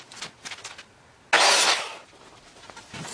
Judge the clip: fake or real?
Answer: real